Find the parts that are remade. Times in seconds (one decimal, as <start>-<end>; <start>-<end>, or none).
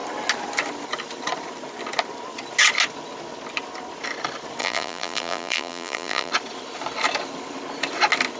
4.6-6.3